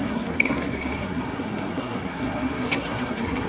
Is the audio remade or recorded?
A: remade